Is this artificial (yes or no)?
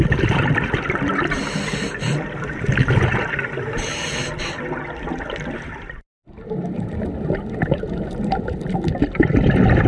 no